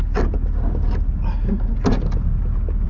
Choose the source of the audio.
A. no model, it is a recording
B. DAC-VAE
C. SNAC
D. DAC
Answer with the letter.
A